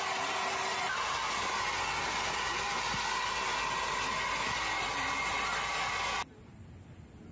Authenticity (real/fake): real